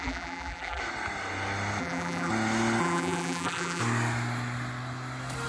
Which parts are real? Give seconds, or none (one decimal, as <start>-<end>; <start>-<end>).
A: 0.8-1.8; 2.3-2.8; 3.8-5.5